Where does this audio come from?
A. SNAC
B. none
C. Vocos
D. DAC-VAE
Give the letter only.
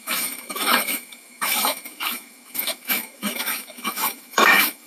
D